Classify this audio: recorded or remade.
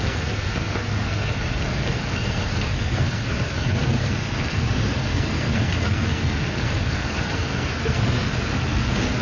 remade